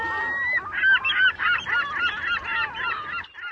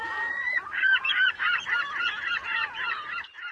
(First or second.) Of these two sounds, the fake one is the second